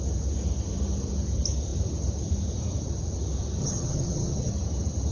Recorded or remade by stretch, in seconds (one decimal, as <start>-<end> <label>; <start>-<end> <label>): 0.0-3.6 recorded; 3.6-4.5 remade; 4.5-5.1 recorded